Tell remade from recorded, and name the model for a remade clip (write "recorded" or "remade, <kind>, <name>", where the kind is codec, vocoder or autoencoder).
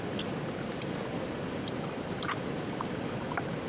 recorded